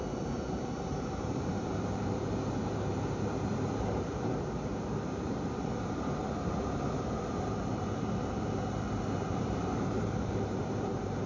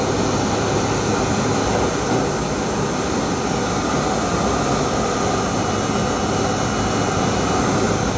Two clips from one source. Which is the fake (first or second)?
first